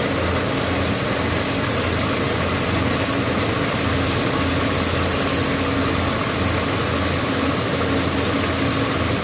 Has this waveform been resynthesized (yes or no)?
no